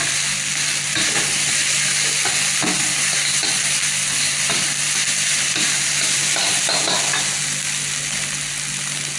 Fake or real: real